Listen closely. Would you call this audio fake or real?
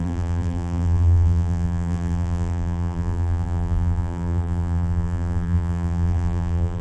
fake